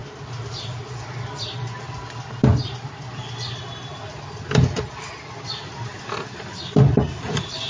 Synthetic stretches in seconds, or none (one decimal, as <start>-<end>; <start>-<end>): 0.0-7.7